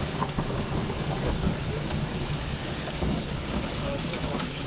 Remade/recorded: remade